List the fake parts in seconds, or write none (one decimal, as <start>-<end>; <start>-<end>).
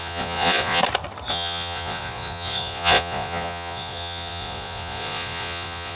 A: 0.0-0.8; 1.3-6.0